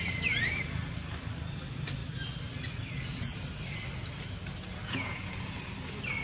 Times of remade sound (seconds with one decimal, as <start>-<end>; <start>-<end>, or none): 4.8-5.6